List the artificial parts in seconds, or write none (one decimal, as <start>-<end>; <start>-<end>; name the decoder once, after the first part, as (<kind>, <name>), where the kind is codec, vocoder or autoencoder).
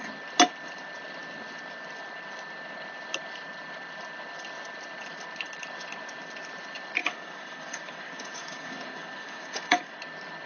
7.0-10.0 (codec, DAC)